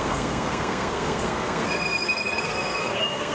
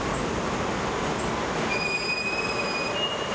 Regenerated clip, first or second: first